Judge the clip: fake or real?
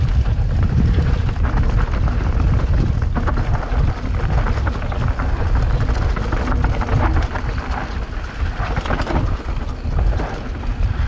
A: real